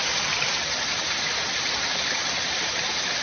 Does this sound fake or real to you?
real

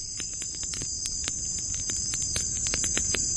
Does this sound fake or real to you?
fake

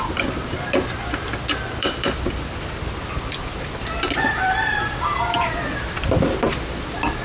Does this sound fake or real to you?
fake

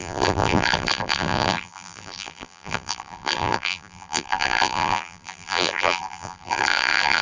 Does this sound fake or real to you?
fake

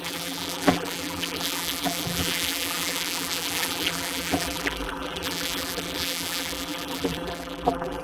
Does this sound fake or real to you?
fake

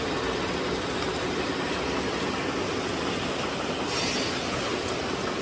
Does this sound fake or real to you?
real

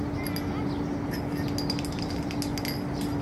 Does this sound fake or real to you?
real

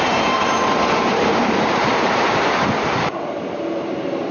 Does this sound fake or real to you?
fake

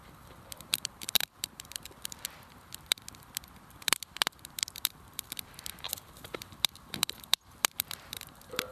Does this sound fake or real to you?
fake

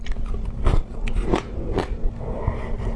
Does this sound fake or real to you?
real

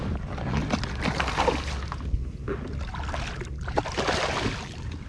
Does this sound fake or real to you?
real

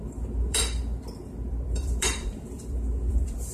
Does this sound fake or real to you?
fake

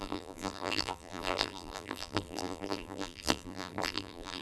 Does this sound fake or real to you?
fake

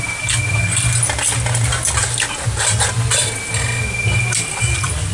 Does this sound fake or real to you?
real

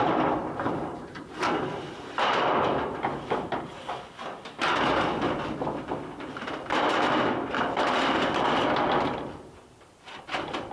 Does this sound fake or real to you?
fake